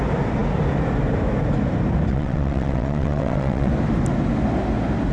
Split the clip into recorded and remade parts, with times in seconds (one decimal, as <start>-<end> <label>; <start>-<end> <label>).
0.0-2.1 recorded; 2.1-3.7 remade; 3.7-5.1 recorded